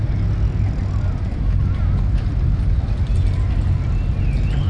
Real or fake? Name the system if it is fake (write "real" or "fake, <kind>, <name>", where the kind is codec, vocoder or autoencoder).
real